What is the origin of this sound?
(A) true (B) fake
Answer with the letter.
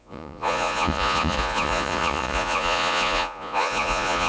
B